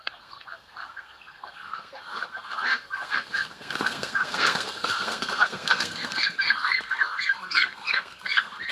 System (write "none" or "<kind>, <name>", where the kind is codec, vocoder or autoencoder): codec, SNAC